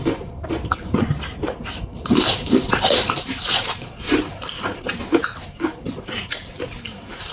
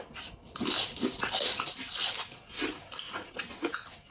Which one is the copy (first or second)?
first